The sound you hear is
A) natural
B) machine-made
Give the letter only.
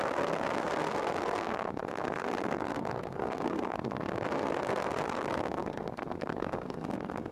B